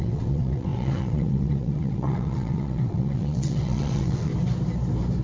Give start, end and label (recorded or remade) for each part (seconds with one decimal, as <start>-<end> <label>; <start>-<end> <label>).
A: 0.0-4.3 remade; 4.3-5.2 recorded